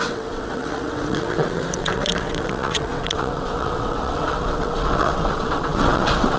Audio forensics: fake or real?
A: fake